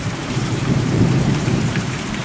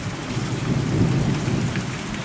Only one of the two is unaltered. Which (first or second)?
second